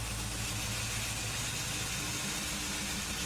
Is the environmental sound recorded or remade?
recorded